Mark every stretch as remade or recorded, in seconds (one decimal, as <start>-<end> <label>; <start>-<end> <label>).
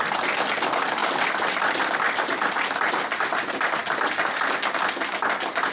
0.0-5.7 recorded